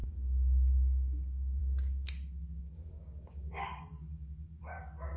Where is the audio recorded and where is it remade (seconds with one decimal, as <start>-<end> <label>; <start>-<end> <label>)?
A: 0.0-1.6 remade; 1.6-2.6 recorded; 2.6-4.8 remade; 4.8-5.2 recorded